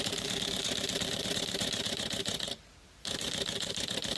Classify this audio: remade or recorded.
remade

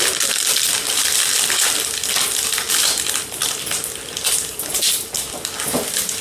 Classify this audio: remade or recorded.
recorded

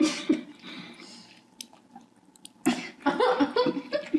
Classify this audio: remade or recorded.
recorded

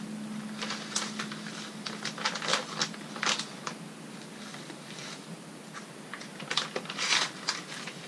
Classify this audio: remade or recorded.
recorded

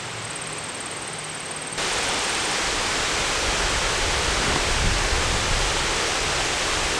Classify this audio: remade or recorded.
remade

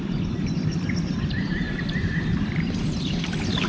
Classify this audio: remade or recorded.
remade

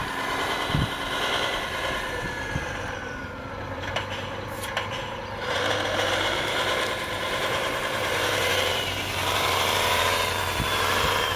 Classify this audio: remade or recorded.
remade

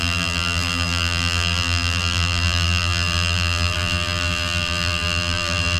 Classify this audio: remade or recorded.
remade